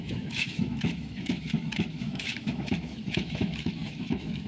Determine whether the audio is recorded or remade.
remade